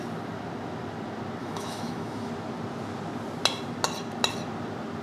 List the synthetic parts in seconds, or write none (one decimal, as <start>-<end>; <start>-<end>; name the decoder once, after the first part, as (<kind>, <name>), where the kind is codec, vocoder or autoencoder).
1.4-2.3 (autoencoder, DAC-VAE)

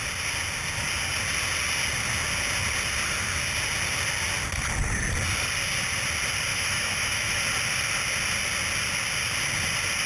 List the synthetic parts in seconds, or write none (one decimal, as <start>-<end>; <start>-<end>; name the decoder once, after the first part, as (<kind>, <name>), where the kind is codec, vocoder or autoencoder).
6.5-7.4 (autoencoder, DAC-VAE)

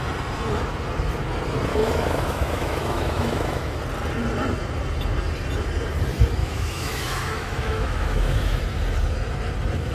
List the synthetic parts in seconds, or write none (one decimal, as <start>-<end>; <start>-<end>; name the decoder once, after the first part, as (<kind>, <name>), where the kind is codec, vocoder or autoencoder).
1.7-3.8 (autoencoder, DAC-VAE); 6.4-8.6

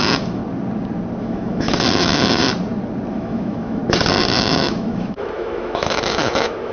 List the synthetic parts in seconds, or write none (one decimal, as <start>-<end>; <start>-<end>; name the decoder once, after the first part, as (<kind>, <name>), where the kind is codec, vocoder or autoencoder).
0.0-0.4 (autoencoder, DAC-VAE); 1.2-2.4; 3.1-3.8; 4.4-6.7

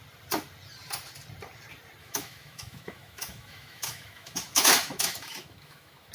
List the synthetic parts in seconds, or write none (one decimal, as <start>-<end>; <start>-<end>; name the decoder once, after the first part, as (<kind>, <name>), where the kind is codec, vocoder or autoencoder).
2.0-6.1 (autoencoder, DAC-VAE)

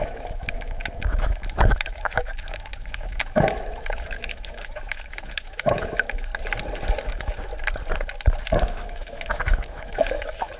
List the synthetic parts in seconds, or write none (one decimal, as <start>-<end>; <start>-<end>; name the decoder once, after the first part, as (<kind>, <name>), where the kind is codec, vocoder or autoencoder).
0.0-6.3 (autoencoder, DAC-VAE); 7.1-7.5; 8.6-10.6